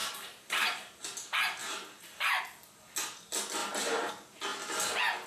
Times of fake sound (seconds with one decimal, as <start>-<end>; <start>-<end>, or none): 0.0-1.0; 1.6-2.4; 3.6-4.1